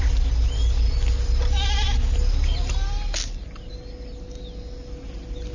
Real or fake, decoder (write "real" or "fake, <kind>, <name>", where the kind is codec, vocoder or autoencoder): real